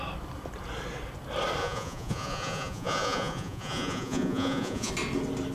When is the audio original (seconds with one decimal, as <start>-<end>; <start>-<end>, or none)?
0.0-1.6; 4.9-5.5